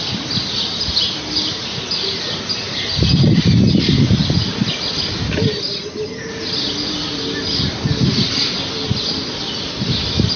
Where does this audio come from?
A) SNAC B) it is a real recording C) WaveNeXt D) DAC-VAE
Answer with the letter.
B